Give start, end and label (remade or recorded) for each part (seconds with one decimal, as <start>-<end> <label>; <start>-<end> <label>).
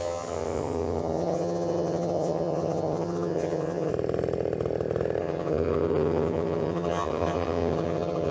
0.0-3.9 remade; 3.9-5.2 recorded; 5.2-8.3 remade